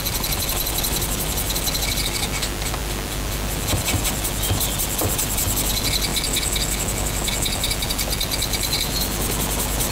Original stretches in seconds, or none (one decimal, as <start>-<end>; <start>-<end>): 0.0-9.9